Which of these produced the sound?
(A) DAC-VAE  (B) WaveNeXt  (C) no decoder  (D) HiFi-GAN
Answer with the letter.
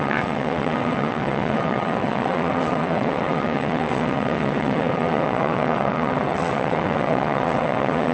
B